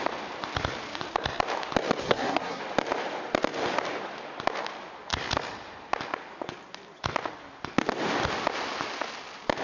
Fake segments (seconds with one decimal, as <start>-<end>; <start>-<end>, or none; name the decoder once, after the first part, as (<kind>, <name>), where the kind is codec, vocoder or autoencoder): 2.0-2.6 (codec, SNAC)